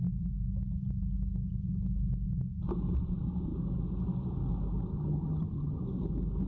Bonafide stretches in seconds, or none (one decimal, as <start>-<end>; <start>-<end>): 0.0-4.9; 5.8-6.5